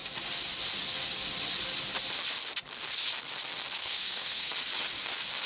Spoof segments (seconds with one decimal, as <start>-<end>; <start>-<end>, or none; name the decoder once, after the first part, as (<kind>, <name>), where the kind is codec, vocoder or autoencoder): 3.8-4.5 (codec, SNAC)